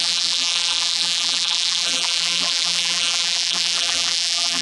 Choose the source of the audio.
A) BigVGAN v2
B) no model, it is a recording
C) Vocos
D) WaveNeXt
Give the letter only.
A